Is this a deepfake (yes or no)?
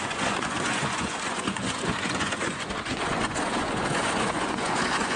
yes